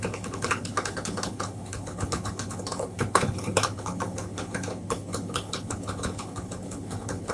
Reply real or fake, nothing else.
fake